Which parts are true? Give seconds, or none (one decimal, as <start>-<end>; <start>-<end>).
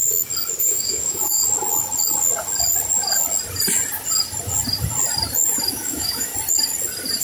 0.0-0.6; 1.4-5.7; 6.3-7.2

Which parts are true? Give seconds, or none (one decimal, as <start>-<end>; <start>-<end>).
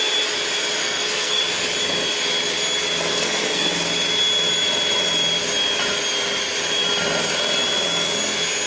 0.0-0.8; 1.4-3.1; 3.7-8.7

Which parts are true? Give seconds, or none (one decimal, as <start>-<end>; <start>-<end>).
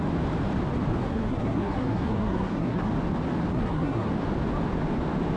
0.0-1.0; 2.9-3.5; 4.1-5.4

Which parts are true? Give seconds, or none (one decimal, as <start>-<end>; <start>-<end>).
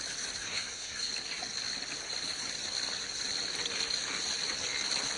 0.0-0.4; 1.1-5.2